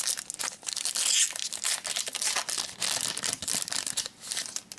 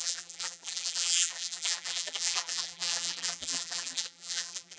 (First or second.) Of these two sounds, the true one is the first